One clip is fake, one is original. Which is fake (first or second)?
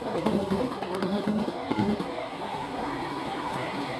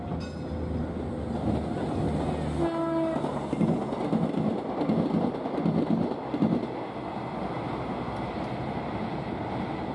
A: first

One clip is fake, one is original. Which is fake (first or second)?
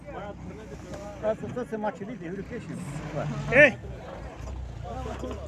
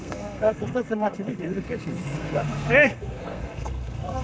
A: second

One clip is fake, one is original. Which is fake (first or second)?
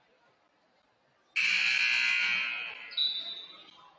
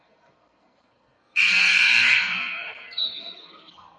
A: second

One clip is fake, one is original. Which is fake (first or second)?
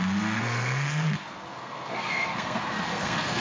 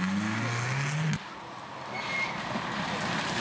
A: first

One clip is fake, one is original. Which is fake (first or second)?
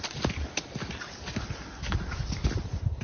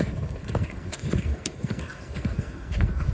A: second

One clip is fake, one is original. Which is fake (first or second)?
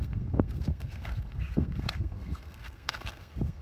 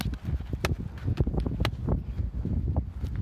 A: first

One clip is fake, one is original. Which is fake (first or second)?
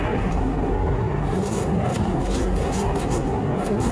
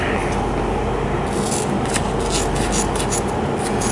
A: first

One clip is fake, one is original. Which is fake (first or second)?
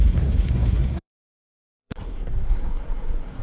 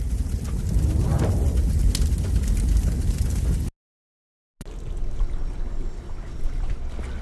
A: first